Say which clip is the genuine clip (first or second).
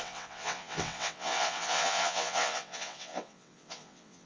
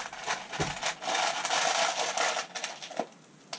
second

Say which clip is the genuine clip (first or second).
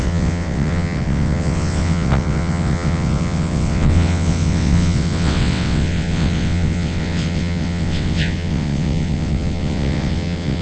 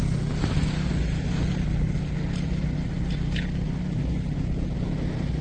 second